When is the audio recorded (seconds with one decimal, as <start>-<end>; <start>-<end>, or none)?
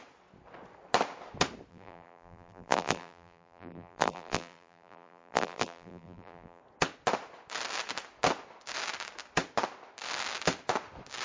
0.0-1.7; 6.6-11.2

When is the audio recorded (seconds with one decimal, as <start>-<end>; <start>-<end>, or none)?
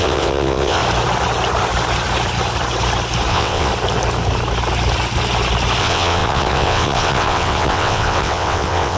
0.8-3.3; 3.7-5.8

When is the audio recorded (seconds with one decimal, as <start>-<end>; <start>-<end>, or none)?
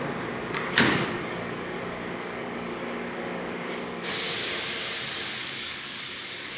0.0-0.4; 4.1-5.4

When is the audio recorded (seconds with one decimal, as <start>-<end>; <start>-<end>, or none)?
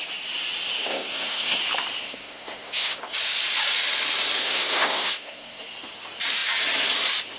0.0-0.8; 1.6-2.0; 3.0-4.4; 5.6-7.4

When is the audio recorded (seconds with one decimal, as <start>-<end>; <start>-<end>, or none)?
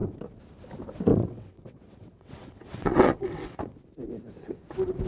0.0-1.1; 3.6-5.1